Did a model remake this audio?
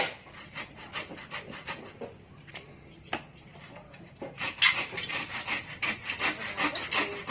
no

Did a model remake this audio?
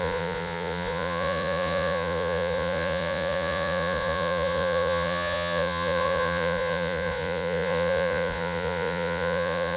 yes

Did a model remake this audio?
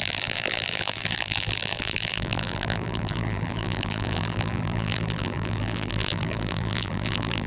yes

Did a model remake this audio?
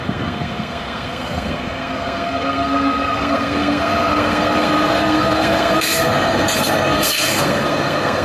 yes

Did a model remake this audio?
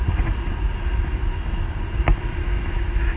no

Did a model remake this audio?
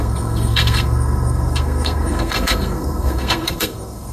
yes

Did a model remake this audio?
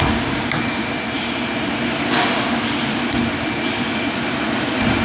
yes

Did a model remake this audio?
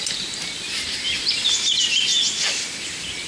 no